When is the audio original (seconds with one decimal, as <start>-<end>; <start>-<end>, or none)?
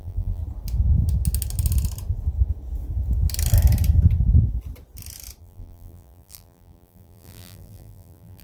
0.4-5.4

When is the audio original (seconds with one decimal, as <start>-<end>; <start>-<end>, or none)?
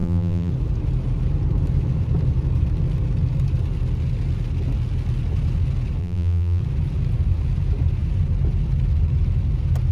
0.5-6.0; 6.6-9.9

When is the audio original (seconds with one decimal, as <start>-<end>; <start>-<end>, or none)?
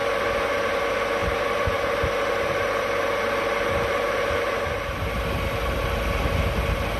0.0-1.2; 5.4-7.0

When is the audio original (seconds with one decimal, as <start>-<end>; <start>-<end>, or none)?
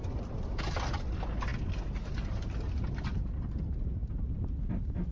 0.0-4.0; 4.5-5.1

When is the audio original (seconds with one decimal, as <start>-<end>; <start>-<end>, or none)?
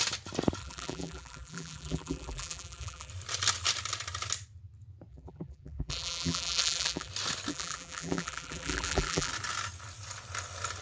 0.0-0.6; 3.1-5.1; 7.1-7.5; 9.3-10.8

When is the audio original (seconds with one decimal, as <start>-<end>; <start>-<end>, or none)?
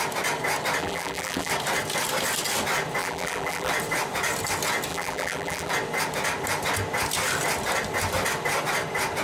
0.0-0.8; 1.5-3.0; 3.7-4.9; 5.7-9.2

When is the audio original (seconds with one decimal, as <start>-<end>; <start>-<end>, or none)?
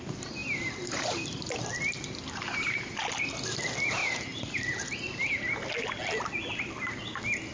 0.0-0.4; 3.2-4.0; 4.9-7.5